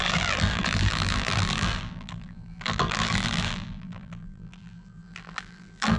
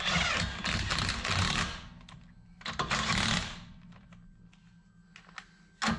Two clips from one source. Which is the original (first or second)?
second